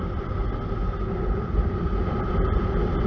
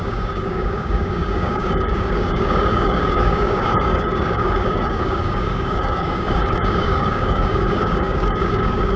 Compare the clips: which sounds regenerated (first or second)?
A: second